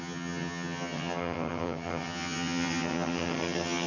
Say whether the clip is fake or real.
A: fake